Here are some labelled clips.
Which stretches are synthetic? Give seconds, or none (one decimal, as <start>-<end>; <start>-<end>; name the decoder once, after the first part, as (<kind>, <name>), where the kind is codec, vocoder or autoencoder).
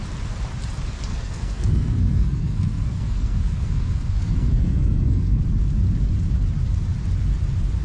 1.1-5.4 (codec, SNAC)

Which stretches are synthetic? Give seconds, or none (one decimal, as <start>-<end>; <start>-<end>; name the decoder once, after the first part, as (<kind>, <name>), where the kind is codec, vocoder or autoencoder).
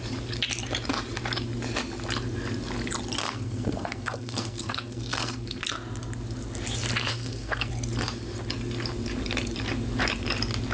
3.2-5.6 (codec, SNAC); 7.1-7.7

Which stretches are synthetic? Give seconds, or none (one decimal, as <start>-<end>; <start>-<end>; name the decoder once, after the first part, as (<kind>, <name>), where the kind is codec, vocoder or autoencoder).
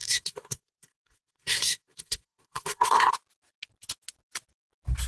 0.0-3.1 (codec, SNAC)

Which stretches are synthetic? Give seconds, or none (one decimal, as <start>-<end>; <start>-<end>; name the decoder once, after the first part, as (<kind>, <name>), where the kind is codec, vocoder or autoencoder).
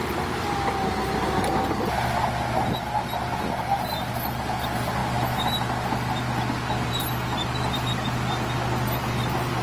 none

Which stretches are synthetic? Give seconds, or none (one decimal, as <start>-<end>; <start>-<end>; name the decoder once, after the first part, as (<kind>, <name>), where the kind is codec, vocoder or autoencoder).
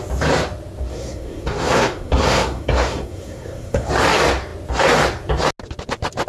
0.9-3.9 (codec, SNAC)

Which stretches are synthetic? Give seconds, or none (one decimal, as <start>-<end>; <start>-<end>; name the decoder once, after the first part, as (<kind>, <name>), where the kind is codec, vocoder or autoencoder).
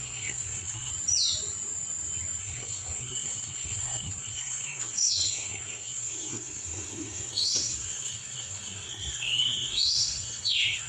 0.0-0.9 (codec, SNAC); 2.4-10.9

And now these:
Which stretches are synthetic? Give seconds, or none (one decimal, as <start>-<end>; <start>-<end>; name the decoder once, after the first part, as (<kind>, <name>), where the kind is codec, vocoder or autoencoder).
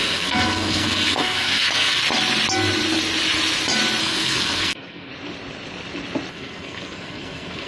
0.0-2.0 (codec, SNAC); 4.0-5.1; 6.3-7.7